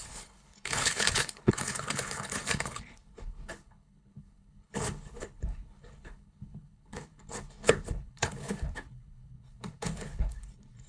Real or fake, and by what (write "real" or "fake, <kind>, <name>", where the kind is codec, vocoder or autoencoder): fake, codec, HILCodec